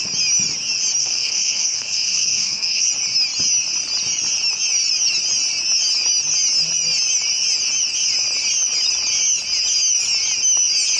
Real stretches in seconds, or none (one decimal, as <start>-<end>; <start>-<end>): 0.0-1.0; 2.9-11.0